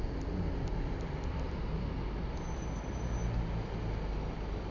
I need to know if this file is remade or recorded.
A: recorded